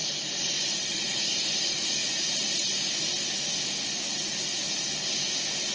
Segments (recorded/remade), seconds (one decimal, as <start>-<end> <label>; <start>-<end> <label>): 0.0-1.2 remade; 1.2-2.0 recorded; 2.0-2.6 remade; 2.6-5.7 recorded